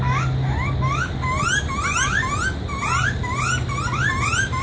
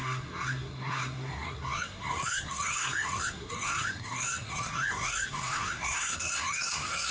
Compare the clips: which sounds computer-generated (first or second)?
second